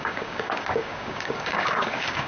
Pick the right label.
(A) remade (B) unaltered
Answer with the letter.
A